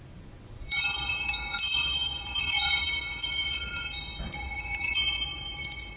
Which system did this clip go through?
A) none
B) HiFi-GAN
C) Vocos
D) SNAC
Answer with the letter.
C